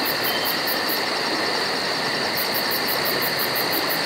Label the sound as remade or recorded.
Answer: recorded